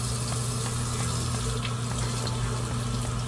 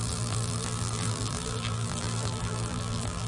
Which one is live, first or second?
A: first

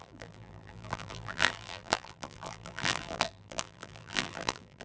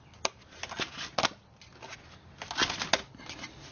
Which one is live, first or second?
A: second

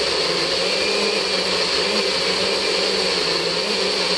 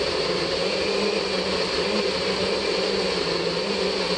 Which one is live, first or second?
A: first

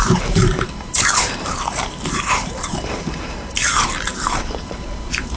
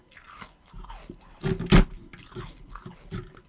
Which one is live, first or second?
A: second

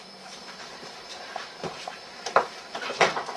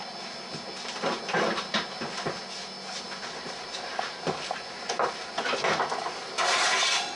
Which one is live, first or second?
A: second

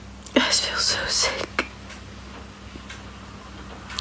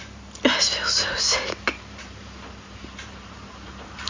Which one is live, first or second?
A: first